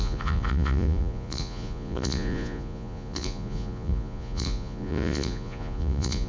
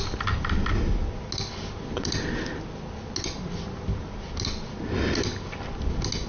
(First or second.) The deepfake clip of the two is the first